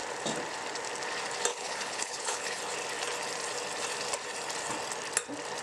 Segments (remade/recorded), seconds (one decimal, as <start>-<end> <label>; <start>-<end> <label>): 0.0-1.5 recorded; 1.5-2.6 remade; 2.6-5.6 recorded